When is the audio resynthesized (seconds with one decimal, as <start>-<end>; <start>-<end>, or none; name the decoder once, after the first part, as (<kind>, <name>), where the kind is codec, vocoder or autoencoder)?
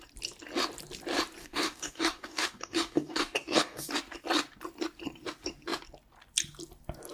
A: 1.4-3.9 (codec, DAC)